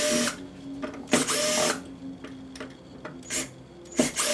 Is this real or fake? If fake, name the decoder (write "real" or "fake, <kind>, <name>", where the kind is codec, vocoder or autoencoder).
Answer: real